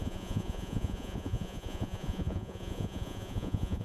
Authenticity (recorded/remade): remade